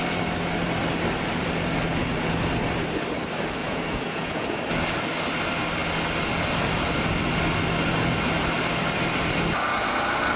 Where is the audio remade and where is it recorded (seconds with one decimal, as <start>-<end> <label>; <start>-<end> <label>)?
0.0-3.6 recorded; 3.6-4.6 remade; 4.6-10.4 recorded